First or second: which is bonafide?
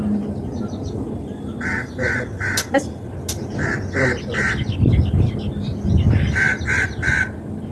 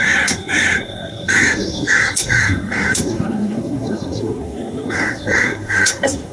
first